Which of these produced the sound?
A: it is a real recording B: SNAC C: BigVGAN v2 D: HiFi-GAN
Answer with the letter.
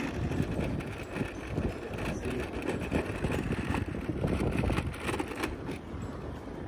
A